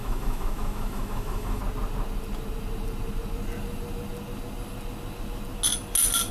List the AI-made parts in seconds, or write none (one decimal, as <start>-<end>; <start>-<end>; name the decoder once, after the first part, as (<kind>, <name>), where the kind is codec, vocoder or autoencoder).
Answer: 0.0-1.6 (autoencoder, DAC-VAE)